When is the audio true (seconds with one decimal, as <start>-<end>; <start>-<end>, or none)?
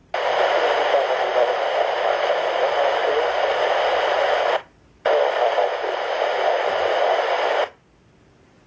0.0-0.9